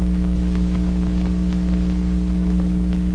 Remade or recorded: remade